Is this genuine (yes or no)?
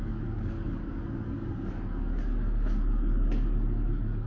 no